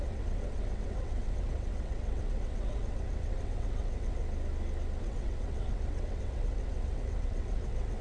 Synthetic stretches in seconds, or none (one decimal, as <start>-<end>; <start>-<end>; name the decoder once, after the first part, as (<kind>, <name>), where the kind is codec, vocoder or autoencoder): 0.0-4.2 (vocoder, WaveNeXt); 5.0-8.0